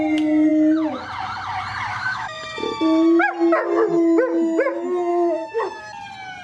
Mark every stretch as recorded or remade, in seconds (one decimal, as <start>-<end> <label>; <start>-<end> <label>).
0.0-1.9 recorded; 1.9-2.4 remade; 2.4-5.1 recorded; 5.1-5.8 remade; 5.8-6.4 recorded